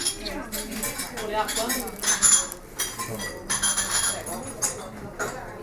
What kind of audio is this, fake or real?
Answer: real